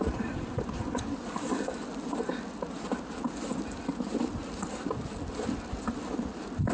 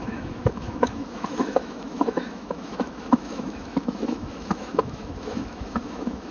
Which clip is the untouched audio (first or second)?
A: first